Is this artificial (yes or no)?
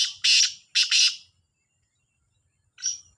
no